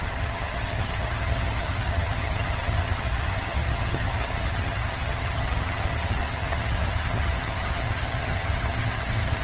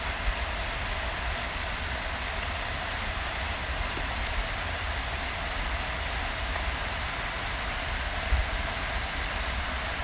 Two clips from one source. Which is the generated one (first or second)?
first